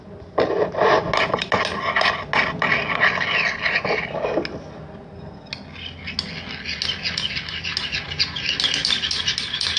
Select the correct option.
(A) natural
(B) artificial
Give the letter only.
A